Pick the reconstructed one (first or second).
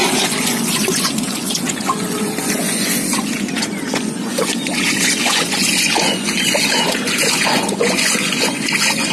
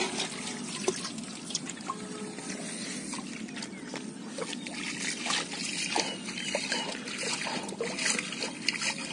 first